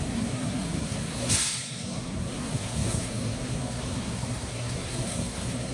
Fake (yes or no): yes